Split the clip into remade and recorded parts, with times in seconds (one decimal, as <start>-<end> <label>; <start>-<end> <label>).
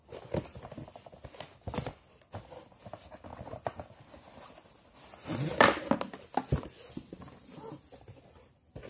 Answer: 0.0-8.9 recorded